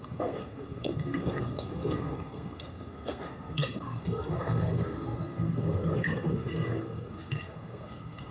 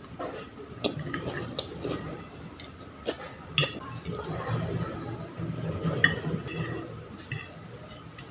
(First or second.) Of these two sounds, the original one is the second